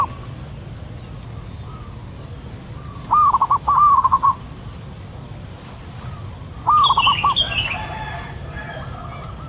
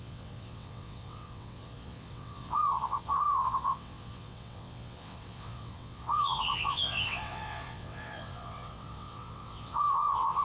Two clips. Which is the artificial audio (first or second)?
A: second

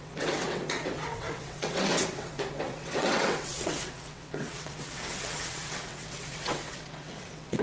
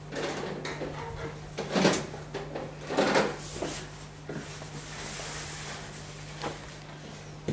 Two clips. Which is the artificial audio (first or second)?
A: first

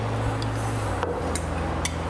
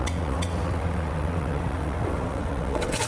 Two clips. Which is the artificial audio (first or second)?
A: second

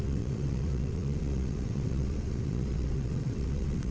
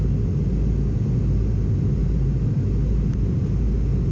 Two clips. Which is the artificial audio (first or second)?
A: first